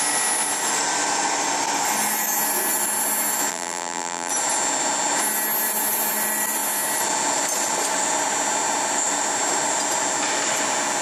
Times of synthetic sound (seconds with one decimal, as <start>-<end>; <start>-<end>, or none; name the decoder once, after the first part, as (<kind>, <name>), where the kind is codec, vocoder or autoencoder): 3.5-4.3 (vocoder, BigVGAN v2)